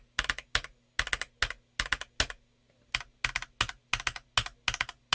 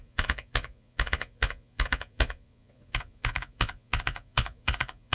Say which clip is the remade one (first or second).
second